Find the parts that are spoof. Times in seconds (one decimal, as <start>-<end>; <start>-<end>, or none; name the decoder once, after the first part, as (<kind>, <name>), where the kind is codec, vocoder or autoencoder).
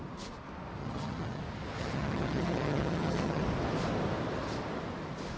0.8-1.4 (vocoder, HiFi-GAN); 1.8-3.4